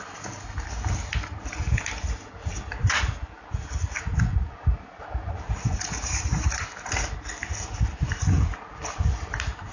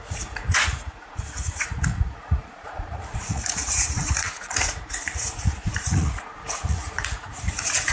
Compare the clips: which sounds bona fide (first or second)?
first